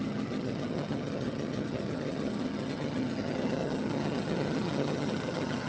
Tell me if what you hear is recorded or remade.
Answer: remade